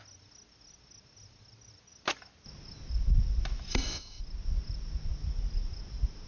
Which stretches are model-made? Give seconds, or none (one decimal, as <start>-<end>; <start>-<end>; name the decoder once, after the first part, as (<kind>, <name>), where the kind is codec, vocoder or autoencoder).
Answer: 3.7-4.2 (autoencoder, DAC-VAE)